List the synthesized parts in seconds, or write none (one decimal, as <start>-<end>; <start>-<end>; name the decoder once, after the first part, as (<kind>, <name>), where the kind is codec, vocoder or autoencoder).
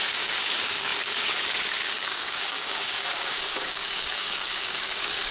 0.0-5.3 (codec, DAC)